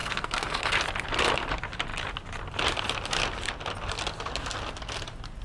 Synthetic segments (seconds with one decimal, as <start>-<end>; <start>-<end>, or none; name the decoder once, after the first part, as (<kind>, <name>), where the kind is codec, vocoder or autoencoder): 0.0-0.7 (codec, SNAC)